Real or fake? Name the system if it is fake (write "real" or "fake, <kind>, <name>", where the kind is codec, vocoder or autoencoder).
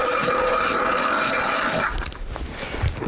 real